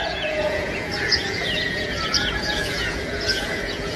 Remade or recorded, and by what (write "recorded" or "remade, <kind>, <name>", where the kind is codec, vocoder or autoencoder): remade, vocoder, Vocos